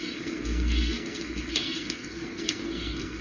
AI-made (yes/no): yes